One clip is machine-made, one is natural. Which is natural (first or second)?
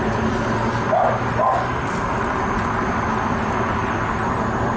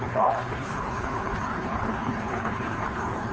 first